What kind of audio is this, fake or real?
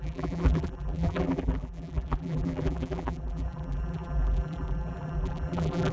fake